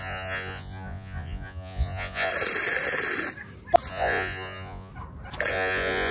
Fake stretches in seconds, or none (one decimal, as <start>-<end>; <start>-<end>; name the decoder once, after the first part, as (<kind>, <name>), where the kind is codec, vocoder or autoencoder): 0.0-2.3 (vocoder, Vocos); 3.9-4.9; 5.5-6.1